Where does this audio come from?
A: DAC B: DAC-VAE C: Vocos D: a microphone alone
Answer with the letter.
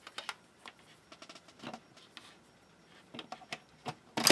D